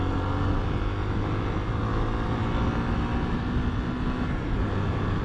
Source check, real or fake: real